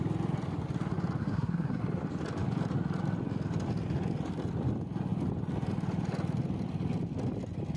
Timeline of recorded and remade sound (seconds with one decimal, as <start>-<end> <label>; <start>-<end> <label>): 0.0-1.2 recorded; 1.2-1.8 remade; 1.8-7.8 recorded